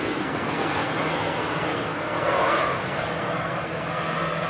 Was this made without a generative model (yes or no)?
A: no